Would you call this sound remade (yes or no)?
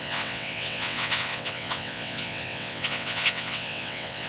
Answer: yes